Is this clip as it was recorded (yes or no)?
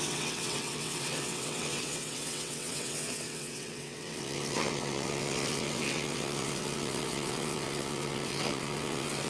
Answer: no